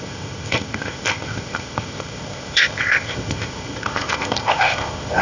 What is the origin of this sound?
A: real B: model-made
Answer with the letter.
B